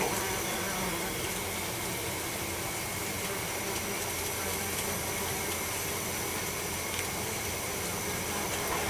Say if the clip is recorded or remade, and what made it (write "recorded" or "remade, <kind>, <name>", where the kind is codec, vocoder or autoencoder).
recorded